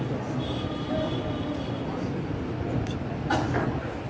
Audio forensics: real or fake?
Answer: real